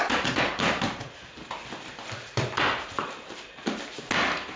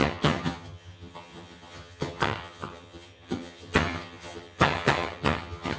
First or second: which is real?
first